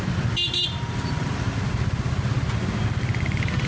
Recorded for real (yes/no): yes